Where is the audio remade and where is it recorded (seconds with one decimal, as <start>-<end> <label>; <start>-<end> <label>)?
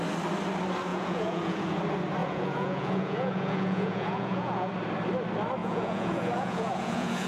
0.0-0.9 recorded; 0.9-1.7 remade; 1.7-2.2 recorded; 2.2-4.7 remade; 4.7-5.6 recorded; 5.6-7.3 remade